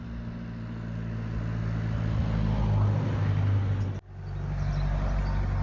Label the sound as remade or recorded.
recorded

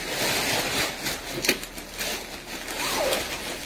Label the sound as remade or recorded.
recorded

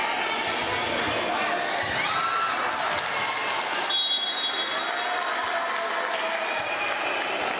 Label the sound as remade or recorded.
recorded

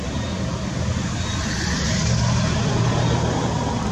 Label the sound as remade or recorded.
recorded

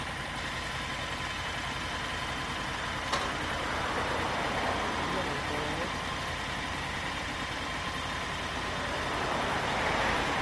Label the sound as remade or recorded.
recorded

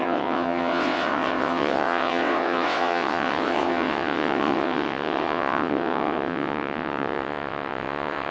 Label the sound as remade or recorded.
remade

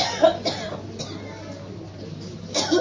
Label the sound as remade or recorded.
recorded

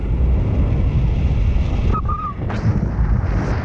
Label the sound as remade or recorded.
recorded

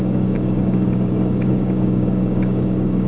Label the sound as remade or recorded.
remade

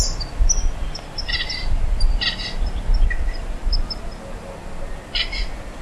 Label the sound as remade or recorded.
recorded